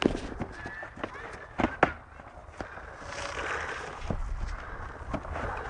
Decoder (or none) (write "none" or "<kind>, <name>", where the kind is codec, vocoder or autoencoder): none